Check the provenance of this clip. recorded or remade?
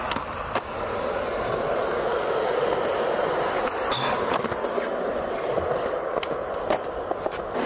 recorded